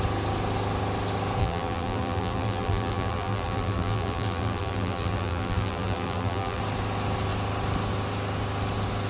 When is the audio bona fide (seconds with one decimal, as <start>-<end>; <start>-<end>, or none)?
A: 0.0-1.4; 6.6-9.1